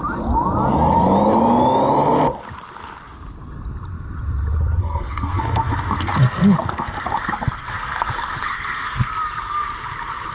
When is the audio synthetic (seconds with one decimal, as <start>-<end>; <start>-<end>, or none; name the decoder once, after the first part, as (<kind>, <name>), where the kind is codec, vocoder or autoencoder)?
4.8-9.1 (codec, SNAC)